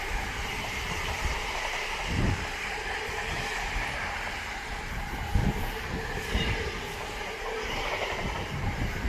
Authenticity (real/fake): fake